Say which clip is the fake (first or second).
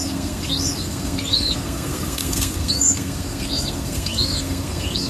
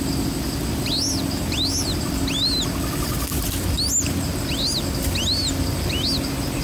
first